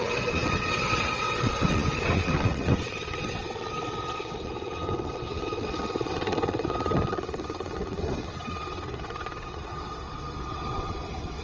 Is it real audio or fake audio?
fake